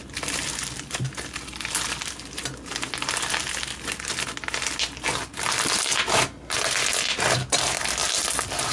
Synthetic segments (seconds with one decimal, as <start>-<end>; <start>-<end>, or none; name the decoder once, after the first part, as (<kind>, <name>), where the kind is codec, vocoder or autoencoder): none